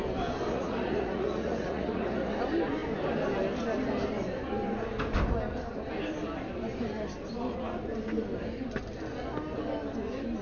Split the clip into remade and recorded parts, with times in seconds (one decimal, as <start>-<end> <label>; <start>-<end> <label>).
0.0-0.5 recorded; 0.5-2.3 remade; 2.3-10.4 recorded

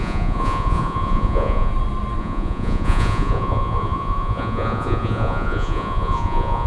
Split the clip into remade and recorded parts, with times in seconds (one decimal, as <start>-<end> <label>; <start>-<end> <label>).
0.0-1.7 remade; 1.7-2.2 recorded; 2.2-6.7 remade

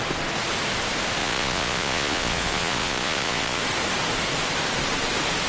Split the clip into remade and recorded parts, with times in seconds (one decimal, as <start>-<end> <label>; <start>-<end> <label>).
0.0-1.2 recorded; 1.2-3.6 remade; 3.6-5.5 recorded